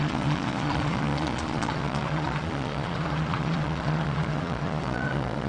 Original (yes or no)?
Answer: no